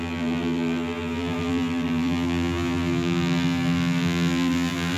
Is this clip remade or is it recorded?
remade